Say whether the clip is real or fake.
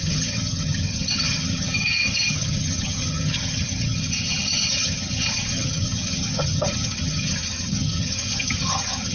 fake